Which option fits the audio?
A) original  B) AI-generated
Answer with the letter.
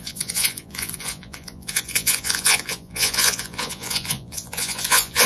B